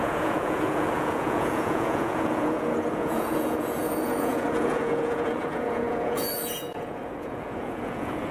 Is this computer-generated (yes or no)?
yes